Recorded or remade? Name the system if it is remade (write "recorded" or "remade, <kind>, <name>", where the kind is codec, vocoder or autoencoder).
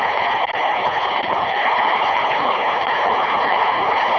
remade, codec, HILCodec